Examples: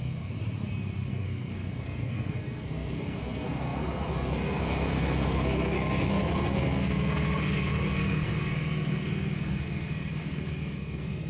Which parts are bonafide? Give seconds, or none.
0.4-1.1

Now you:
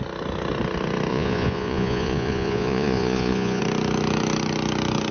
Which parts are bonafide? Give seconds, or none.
0.0-1.1; 3.6-5.1